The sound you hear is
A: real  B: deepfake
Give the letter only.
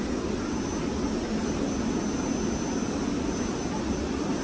A